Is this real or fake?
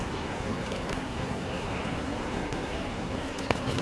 fake